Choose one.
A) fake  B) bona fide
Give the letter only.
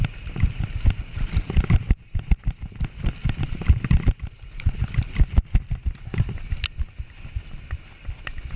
B